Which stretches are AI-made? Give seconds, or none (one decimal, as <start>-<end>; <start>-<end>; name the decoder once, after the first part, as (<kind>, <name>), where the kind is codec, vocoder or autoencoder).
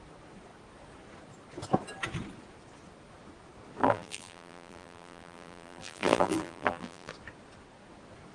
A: 3.8-7.1 (vocoder, BigVGAN v2)